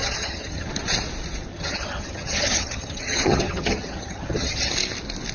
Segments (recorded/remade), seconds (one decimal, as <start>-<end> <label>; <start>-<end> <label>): 0.0-0.7 remade; 0.7-1.5 recorded; 1.5-4.7 remade; 4.7-5.3 recorded